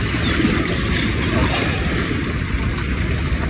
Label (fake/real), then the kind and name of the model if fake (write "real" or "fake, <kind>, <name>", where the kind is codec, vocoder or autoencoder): real